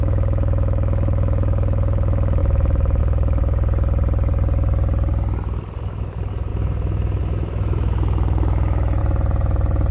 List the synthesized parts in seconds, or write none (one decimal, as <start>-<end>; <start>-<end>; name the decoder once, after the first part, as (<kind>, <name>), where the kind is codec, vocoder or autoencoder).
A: 0.0-3.4 (autoencoder, DAC-VAE); 5.8-9.0